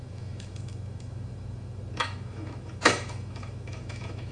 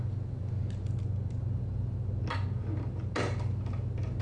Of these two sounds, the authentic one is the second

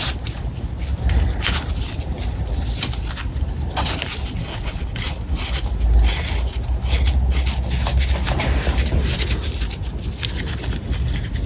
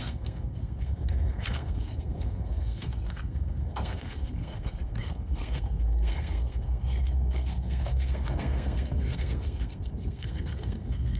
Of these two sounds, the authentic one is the first